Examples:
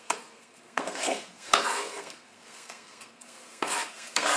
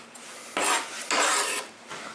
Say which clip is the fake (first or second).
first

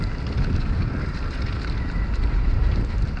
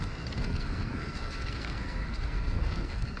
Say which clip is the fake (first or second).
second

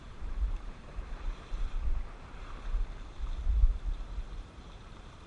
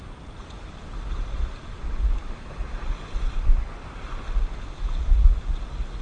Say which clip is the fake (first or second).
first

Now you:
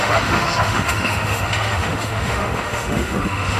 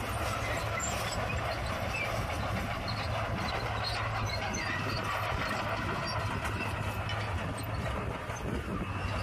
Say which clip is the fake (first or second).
first